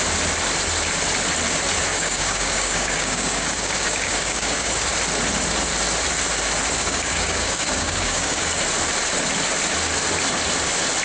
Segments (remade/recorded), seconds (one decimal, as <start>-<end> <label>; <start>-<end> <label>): 0.0-1.9 recorded; 1.9-4.7 remade; 4.7-6.8 recorded; 6.8-8.6 remade; 8.6-11.0 recorded